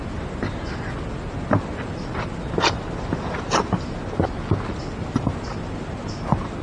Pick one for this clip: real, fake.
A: real